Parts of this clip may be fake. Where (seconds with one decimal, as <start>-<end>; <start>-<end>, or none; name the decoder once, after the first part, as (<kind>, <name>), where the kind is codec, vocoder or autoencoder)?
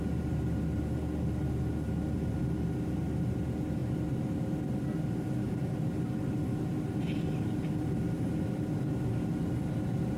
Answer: none